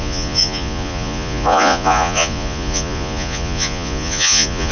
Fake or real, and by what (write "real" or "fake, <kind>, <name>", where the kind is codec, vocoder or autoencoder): fake, vocoder, Vocos